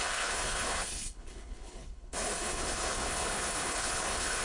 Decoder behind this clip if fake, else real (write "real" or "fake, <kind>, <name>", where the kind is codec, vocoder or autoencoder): fake, codec, HILCodec